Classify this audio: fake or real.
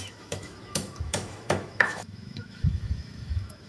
fake